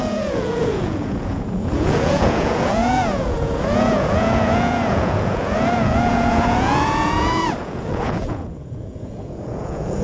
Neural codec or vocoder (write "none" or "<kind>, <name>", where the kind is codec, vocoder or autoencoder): vocoder, Vocos